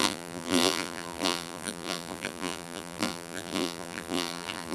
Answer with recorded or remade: remade